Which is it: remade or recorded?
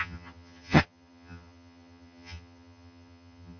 remade